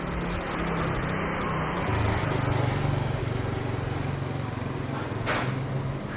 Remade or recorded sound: recorded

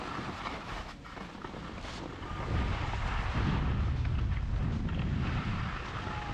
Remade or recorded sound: recorded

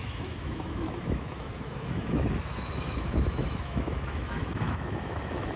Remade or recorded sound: remade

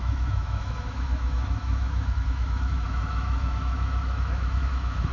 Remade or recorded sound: remade